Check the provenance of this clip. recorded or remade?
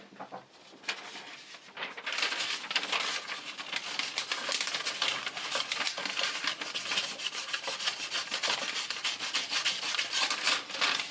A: recorded